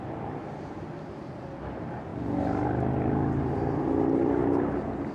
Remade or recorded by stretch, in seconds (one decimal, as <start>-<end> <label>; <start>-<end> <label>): 0.0-2.1 recorded; 2.1-5.1 remade